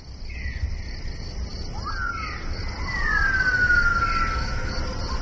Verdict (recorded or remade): recorded